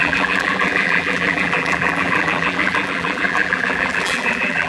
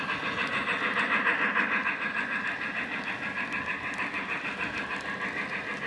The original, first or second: second